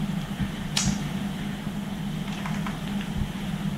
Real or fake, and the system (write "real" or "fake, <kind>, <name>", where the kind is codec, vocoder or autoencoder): real